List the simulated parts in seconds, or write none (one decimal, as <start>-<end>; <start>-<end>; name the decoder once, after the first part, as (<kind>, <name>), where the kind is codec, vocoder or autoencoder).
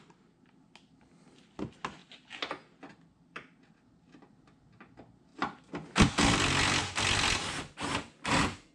2.0-4.1 (vocoder, BigVGAN v2)